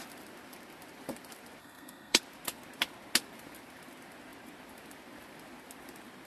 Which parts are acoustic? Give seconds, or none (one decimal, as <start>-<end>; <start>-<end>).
0.0-1.6; 2.2-6.3